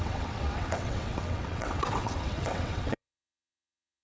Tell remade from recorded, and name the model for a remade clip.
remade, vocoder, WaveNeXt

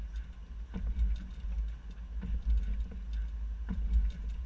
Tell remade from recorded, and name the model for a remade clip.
recorded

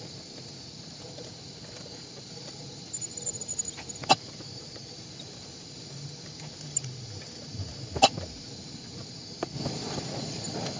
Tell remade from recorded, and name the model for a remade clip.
recorded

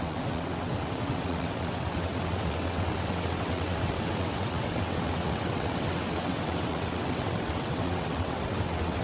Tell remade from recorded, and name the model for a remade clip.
remade, vocoder, WaveNeXt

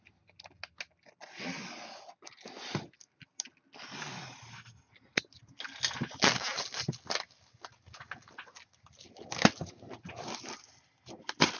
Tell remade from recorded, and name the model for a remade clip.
recorded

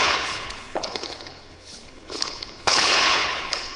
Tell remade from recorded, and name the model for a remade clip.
remade, codec, HILCodec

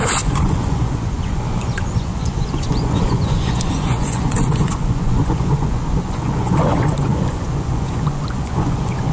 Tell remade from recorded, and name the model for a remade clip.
remade, vocoder, Vocos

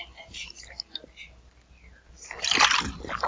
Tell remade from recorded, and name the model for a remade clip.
recorded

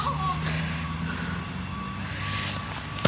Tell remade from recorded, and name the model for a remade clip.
recorded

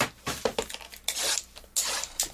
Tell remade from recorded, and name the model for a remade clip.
recorded